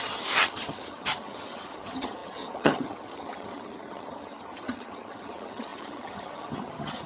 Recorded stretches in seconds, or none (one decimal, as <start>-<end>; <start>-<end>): none